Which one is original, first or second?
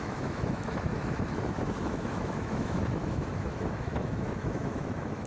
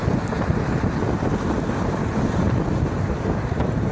second